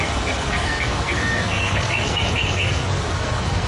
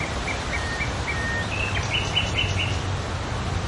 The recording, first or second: second